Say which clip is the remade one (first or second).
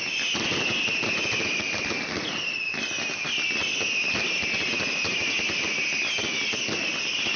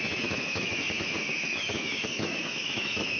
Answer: second